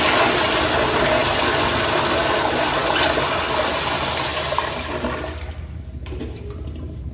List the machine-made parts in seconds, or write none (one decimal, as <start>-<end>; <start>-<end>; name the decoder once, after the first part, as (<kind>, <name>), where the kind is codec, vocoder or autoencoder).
1.2-2.0 (vocoder, BigVGAN v2)